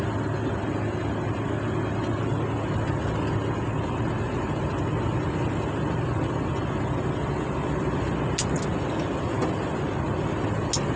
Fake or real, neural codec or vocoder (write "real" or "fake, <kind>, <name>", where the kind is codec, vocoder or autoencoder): real